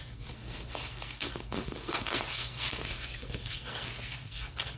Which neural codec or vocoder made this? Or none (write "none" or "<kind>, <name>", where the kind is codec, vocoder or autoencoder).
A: codec, SNAC